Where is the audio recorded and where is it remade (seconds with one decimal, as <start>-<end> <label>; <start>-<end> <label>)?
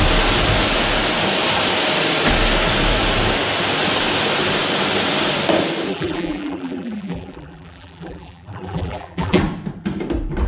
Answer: 0.0-5.9 recorded; 5.9-9.4 remade; 9.4-10.5 recorded